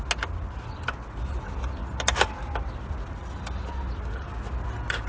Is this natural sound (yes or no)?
yes